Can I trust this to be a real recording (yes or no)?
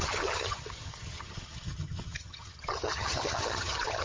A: no